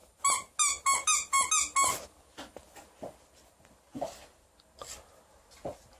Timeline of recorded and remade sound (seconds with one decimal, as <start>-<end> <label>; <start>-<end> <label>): 0.0-6.0 recorded